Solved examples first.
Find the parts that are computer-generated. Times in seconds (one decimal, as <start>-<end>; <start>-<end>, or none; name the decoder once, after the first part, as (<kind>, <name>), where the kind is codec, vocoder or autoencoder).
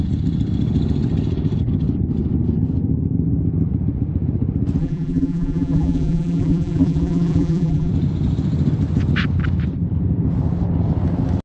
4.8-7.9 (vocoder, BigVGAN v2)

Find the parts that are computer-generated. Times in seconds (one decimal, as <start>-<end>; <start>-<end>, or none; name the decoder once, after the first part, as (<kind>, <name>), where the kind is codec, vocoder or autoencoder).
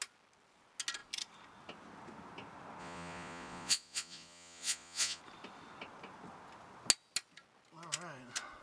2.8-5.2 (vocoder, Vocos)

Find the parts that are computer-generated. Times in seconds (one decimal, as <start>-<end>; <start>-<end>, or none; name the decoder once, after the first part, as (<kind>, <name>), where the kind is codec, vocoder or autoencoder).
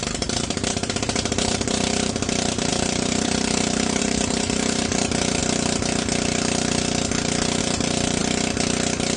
0.0-5.4 (vocoder, BigVGAN v2); 7.6-8.2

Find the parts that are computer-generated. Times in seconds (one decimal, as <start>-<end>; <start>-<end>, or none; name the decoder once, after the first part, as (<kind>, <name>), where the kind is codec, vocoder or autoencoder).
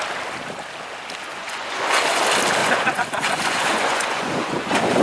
1.3-2.2 (vocoder, Vocos); 2.6-5.0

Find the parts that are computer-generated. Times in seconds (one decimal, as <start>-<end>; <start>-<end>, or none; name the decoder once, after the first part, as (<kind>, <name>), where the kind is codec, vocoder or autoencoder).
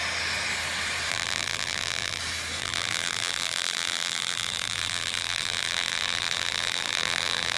1.1-2.2 (vocoder, BigVGAN v2); 2.6-7.6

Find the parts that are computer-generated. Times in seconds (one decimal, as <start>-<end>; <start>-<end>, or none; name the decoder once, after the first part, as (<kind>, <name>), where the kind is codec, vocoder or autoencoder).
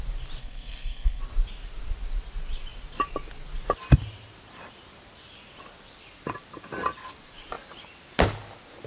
0.4-1.2 (codec, SNAC)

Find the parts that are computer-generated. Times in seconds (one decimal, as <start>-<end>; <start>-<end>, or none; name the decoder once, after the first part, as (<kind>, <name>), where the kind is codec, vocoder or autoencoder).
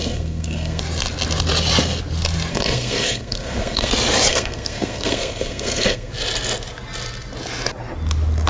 0.0-0.8 (codec, SNAC); 2.5-3.9; 4.3-6.1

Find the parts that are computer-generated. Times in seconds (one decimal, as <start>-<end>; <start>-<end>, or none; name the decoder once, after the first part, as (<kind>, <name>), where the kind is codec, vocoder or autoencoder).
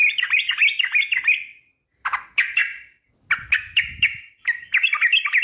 0.0-0.5 (vocoder, BigVGAN v2)